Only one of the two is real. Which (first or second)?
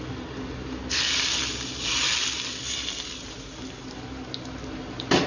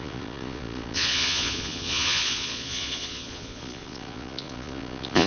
first